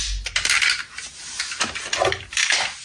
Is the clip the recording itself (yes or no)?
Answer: yes